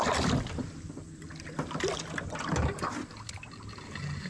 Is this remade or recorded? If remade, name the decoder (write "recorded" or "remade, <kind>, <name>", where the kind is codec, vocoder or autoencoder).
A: recorded